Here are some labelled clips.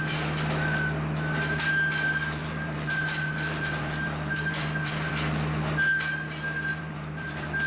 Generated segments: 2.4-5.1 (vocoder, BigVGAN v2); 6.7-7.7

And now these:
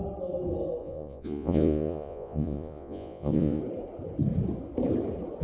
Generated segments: 0.8-3.6 (vocoder, Vocos)